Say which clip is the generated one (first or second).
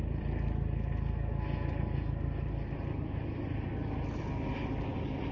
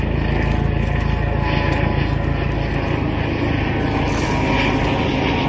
first